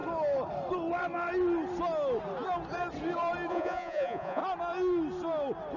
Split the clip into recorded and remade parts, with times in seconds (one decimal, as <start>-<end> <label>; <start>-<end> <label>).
0.0-3.5 recorded; 3.5-4.4 remade; 4.4-5.8 recorded